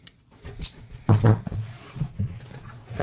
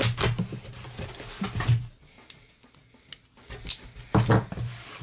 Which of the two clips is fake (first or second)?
first